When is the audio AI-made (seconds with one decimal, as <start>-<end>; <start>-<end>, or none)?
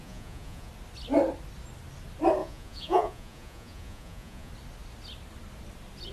0.0-0.7; 2.4-4.5